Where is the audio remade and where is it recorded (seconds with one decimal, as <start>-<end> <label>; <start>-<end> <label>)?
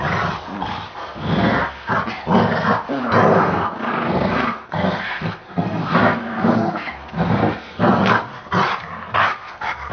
0.0-0.9 recorded; 0.9-1.9 remade; 1.9-3.3 recorded; 3.3-8.0 remade; 8.0-9.2 recorded; 9.2-9.9 remade